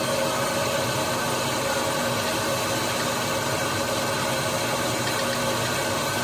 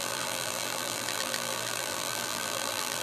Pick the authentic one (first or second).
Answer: first